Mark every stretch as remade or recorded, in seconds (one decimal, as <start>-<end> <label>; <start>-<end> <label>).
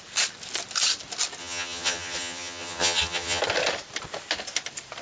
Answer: 0.0-1.4 recorded; 1.4-3.4 remade; 3.4-5.0 recorded